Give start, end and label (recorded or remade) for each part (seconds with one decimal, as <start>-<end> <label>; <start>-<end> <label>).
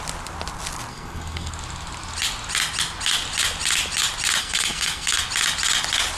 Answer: 0.0-0.9 recorded; 0.9-1.5 remade; 1.5-4.4 recorded; 4.4-5.2 remade; 5.2-6.2 recorded